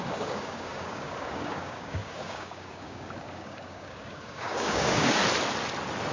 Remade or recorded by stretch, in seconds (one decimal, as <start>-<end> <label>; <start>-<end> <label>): 0.0-5.2 remade; 5.2-6.1 recorded